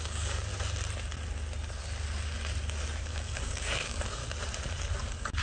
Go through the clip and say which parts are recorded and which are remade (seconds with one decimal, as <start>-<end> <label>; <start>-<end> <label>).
0.0-0.5 remade; 0.5-3.0 recorded; 3.0-4.2 remade; 4.2-5.0 recorded; 5.0-5.4 remade